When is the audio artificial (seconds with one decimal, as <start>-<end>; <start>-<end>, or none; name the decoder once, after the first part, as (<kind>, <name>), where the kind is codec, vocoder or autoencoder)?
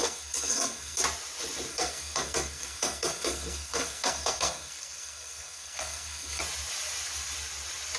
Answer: 0.0-1.0 (codec, SNAC); 1.7-6.4